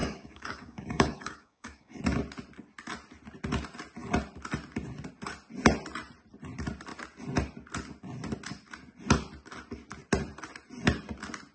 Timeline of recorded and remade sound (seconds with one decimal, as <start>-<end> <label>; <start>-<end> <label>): 0.0-2.0 remade; 2.0-11.5 recorded